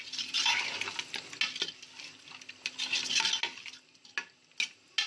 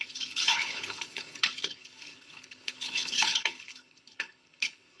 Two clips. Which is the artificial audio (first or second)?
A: second